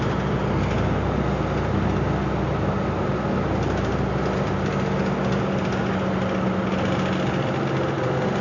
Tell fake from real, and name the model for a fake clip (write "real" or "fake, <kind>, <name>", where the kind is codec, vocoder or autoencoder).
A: real